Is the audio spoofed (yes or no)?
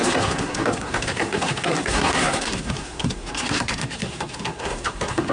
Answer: yes